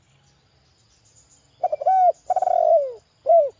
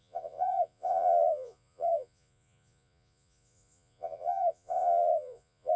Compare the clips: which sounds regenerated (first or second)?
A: second